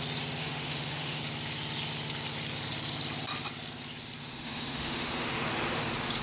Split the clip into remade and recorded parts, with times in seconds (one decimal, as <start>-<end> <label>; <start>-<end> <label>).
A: 0.0-0.4 recorded; 0.4-1.2 remade; 1.2-4.2 recorded; 4.2-5.4 remade; 5.4-6.2 recorded